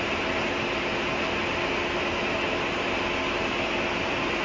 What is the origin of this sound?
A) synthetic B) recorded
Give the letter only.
B